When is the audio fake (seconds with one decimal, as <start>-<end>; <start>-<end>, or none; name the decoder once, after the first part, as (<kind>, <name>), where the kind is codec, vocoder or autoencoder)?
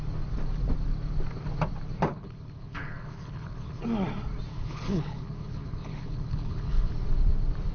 2.1-3.8 (codec, HILCodec); 4.5-6.9